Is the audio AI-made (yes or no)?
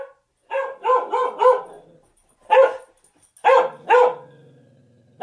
no